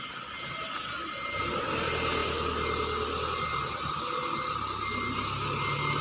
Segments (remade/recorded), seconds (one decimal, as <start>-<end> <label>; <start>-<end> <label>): 0.0-6.0 recorded